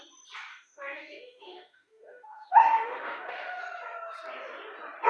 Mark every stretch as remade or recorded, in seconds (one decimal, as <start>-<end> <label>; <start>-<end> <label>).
0.0-0.5 recorded; 0.5-3.6 remade; 3.6-5.1 recorded